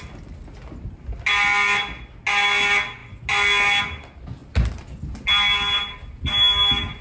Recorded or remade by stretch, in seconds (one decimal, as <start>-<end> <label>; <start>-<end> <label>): 0.0-7.0 recorded